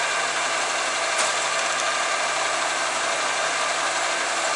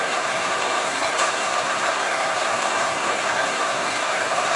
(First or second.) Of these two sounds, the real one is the first